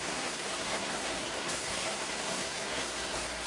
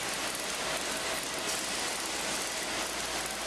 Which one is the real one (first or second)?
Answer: second